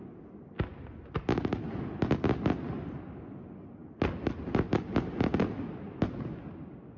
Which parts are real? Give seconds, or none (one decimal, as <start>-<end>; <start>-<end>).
0.0-7.0